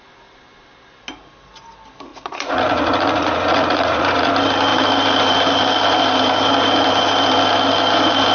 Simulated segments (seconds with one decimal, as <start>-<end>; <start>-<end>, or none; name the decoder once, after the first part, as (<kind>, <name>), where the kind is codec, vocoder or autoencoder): 2.1-4.3 (vocoder, Vocos)